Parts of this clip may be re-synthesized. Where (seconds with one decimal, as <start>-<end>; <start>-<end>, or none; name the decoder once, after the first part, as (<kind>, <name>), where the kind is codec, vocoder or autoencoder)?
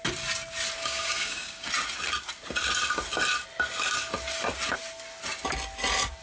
0.8-1.7 (codec, DAC)